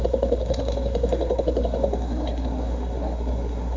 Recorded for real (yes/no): no